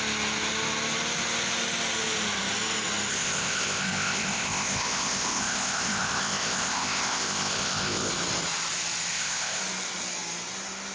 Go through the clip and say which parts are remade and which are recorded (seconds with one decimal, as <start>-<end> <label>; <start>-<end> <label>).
0.0-3.1 recorded; 3.1-8.1 remade; 8.1-9.1 recorded; 9.1-9.6 remade; 9.6-10.9 recorded